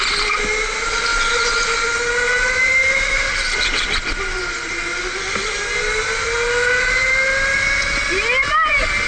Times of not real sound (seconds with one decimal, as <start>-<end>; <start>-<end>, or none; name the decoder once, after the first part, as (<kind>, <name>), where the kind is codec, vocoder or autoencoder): none